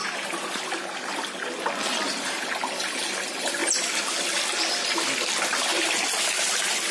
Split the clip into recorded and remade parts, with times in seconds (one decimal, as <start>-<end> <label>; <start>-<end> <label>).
0.0-6.9 recorded